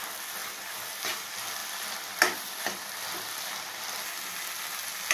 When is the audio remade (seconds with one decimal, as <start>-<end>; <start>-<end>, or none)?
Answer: none